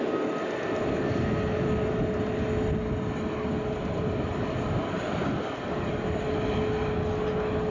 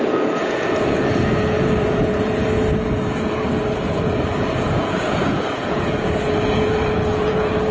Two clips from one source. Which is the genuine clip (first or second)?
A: first